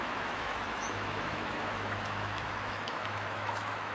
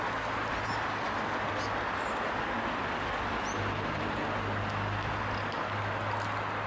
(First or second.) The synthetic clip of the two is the first